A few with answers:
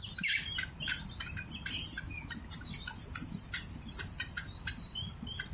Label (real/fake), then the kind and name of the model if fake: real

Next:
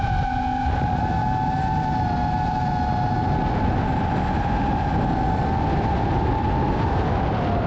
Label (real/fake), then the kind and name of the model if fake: real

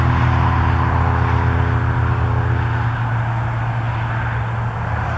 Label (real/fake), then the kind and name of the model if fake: real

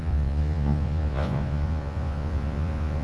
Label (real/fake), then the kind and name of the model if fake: fake, vocoder, Vocos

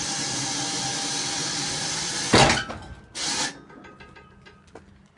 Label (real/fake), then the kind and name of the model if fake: real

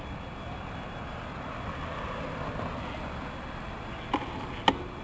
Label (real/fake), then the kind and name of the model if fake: real